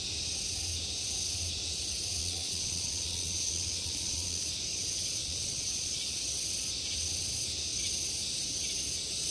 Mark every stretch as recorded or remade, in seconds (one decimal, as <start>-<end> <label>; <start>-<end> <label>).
0.0-2.2 recorded; 2.2-4.4 remade; 4.4-5.2 recorded; 5.2-6.2 remade; 6.2-9.3 recorded